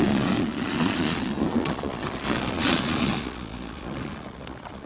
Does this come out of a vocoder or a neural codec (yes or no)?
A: yes